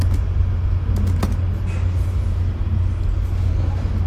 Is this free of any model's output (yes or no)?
yes